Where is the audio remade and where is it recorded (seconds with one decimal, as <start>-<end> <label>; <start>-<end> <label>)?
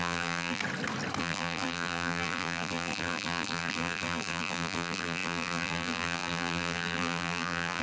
0.0-0.6 remade; 0.6-1.2 recorded; 1.2-7.8 remade